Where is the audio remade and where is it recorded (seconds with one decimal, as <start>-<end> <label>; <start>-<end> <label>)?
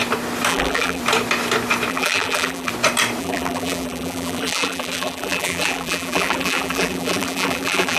0.0-0.5 recorded; 0.5-1.0 remade; 1.0-1.9 recorded; 1.9-2.7 remade; 2.7-3.2 recorded; 3.2-8.0 remade